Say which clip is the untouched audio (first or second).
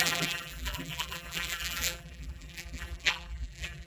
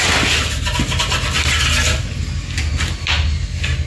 second